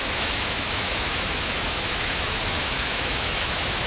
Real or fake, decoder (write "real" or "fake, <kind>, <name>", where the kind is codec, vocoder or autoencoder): fake, autoencoder, DAC-VAE